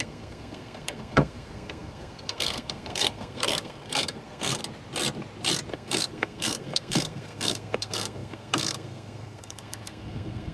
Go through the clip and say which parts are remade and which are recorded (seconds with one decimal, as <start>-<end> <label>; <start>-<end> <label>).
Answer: 0.0-4.6 remade; 4.6-5.7 recorded; 5.7-10.5 remade